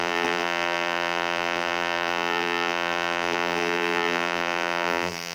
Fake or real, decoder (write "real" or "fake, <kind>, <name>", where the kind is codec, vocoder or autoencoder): fake, vocoder, BigVGAN v2